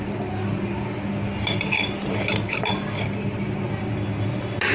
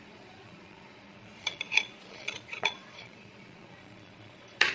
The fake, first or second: second